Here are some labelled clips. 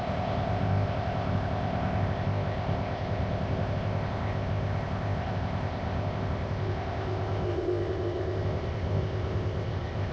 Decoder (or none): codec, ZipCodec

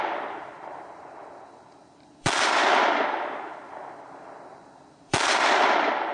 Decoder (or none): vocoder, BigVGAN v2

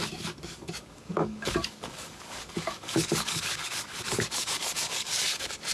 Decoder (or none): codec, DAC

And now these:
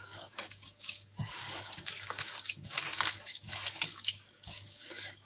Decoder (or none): codec, DAC